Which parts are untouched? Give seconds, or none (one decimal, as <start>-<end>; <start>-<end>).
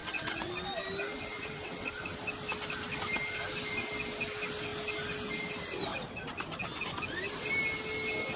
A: 0.5-1.3; 1.9-8.4